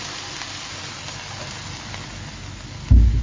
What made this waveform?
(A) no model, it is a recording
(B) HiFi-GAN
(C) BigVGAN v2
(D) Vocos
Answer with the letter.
A